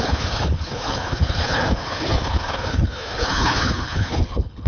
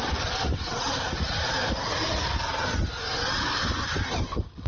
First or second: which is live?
second